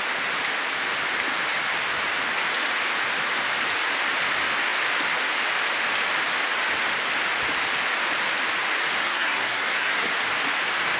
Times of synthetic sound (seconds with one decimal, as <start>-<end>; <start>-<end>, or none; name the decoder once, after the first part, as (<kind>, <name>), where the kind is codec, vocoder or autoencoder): 9.0-10.1 (codec, SNAC)

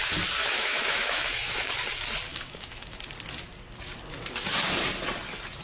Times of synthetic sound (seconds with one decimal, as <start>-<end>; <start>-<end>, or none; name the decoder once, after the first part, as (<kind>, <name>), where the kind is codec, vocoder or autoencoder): 0.4-1.7 (autoencoder, DAC-VAE); 2.3-3.0

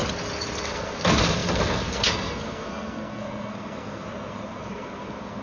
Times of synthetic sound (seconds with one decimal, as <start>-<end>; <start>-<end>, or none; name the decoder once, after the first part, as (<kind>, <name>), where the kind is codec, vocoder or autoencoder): 0.6-5.4 (codec, SNAC)

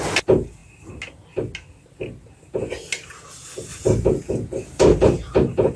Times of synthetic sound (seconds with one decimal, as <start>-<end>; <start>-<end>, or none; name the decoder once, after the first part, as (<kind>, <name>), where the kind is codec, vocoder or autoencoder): 3.7-4.8 (vocoder, BigVGAN v2)

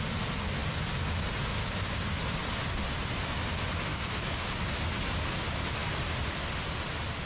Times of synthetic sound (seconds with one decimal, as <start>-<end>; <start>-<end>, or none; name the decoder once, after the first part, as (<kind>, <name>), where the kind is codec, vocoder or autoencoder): 1.6-2.2 (codec, DAC); 3.9-4.6

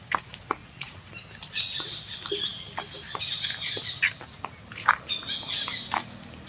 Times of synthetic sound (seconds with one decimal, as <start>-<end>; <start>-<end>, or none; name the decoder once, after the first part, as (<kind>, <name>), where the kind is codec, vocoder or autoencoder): 0.6-1.1 (vocoder, Vocos)

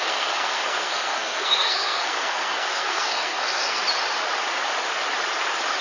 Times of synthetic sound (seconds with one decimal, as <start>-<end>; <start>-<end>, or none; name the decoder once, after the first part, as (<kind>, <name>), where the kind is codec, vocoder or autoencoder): 0.0-3.8 (codec, SNAC)

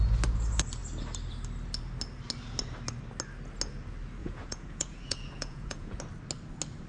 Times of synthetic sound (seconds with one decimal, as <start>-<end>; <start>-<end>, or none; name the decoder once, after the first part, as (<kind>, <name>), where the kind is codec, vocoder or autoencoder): 4.2-6.0 (vocoder, Vocos)